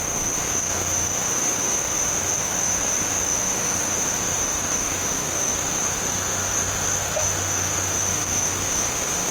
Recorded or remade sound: remade